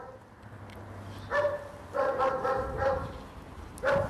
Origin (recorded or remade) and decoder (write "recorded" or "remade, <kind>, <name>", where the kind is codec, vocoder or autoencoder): recorded